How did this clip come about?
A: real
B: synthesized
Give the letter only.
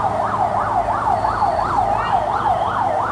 A